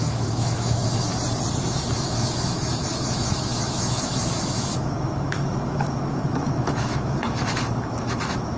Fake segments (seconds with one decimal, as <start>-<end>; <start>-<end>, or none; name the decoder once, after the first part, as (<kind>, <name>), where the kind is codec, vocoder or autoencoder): 0.0-1.1 (autoencoder, DAC-VAE); 1.6-8.6

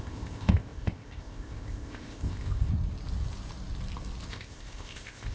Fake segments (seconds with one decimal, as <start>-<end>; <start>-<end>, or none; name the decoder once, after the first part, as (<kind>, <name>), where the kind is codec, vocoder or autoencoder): 0.0-2.7 (codec, ZipCodec); 4.3-5.3

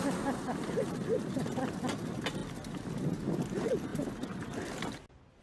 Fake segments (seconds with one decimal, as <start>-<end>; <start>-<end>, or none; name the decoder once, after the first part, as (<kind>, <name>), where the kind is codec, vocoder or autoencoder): none

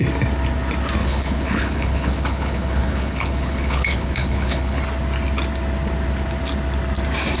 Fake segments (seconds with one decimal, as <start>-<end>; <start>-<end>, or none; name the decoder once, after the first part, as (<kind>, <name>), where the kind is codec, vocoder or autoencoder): 1.0-4.8 (codec, HILCodec)